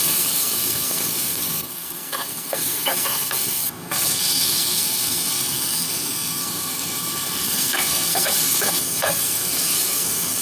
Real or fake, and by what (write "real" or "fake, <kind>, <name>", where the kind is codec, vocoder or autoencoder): fake, codec, SNAC